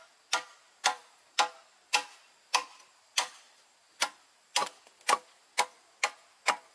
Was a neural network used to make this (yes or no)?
no